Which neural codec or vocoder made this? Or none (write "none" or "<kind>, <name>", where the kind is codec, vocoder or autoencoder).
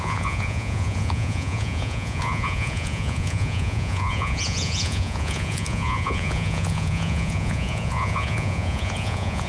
vocoder, Vocos